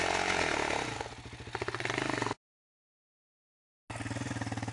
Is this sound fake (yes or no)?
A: no